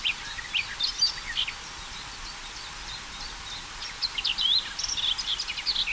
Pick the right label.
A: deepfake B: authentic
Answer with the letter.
B